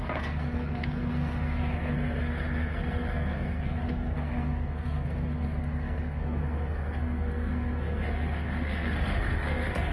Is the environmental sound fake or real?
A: fake